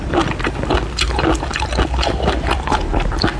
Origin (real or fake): real